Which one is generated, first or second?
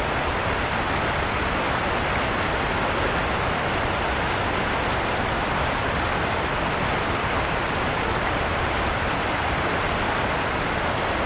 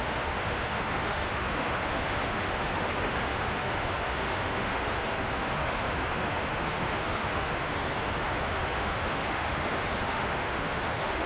second